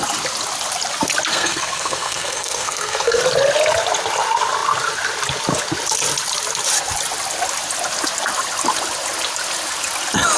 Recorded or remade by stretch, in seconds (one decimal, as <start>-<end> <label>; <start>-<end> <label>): 0.0-1.3 recorded; 1.3-3.2 remade; 3.2-10.4 recorded